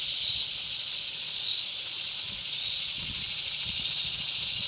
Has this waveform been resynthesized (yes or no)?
yes